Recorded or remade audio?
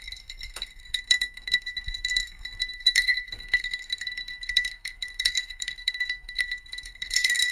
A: remade